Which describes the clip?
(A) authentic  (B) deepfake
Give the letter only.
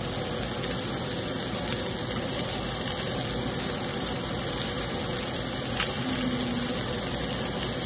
A